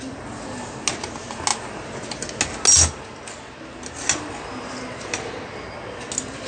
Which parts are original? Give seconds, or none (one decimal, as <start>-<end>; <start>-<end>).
0.0-6.5